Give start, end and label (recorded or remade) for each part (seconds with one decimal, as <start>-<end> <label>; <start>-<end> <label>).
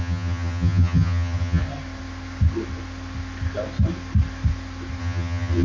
0.0-1.6 remade; 1.6-5.0 recorded; 5.0-5.6 remade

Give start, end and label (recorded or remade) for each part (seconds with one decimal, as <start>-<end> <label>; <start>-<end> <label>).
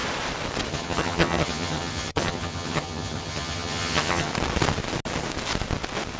0.0-0.7 recorded; 0.7-4.3 remade; 4.3-6.2 recorded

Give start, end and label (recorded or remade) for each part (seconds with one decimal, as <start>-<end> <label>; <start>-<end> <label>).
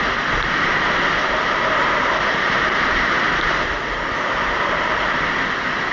0.0-5.9 recorded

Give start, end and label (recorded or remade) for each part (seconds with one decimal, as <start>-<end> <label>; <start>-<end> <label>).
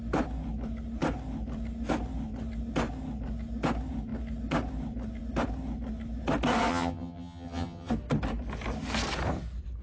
0.0-6.7 recorded; 6.7-7.9 remade; 7.9-9.8 recorded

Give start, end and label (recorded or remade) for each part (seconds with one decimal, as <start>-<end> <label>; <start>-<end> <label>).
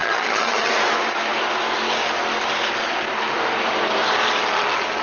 0.0-0.7 remade; 0.7-5.0 recorded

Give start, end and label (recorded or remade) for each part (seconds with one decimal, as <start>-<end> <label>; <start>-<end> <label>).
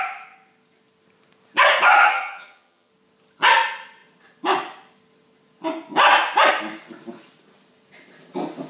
0.0-2.1 recorded; 2.1-2.9 remade; 2.9-8.7 recorded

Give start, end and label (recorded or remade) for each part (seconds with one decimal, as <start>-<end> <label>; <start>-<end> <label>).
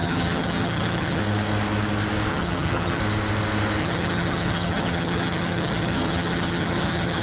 0.0-1.2 remade; 1.2-2.3 recorded; 2.3-3.0 remade; 3.0-3.8 recorded; 3.8-7.2 remade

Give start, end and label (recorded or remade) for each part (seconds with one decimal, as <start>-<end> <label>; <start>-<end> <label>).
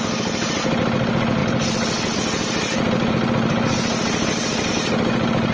0.0-5.5 recorded